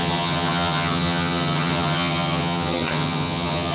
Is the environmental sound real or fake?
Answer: fake